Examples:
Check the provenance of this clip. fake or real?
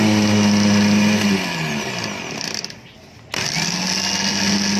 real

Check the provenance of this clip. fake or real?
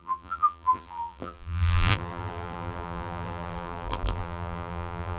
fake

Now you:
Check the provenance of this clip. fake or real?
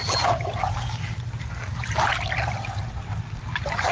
real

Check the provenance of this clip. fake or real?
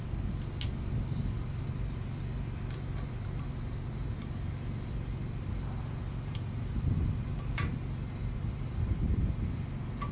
real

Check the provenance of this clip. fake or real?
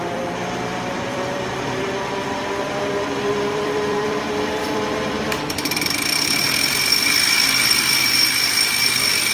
fake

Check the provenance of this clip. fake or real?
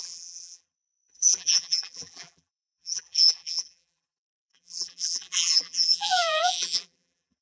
fake